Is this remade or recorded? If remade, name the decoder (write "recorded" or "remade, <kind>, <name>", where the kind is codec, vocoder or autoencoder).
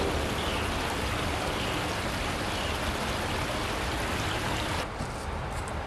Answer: recorded